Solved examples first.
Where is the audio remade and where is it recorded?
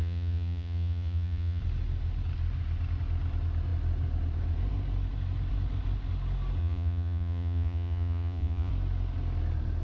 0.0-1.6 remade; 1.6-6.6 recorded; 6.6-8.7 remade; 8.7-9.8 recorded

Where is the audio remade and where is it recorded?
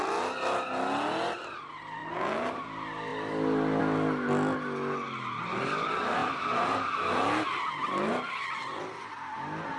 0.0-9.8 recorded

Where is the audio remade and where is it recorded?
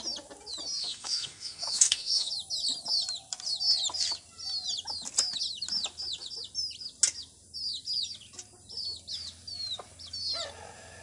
0.0-0.8 recorded; 0.8-2.3 remade; 2.3-11.0 recorded